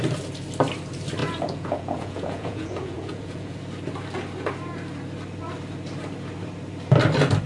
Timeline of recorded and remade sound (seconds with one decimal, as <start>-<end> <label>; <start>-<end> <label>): 0.0-1.2 recorded; 1.2-3.6 remade; 3.6-7.5 recorded